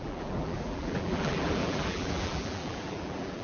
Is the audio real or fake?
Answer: fake